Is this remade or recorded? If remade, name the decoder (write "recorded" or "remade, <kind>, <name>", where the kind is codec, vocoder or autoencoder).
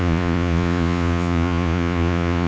remade, vocoder, Vocos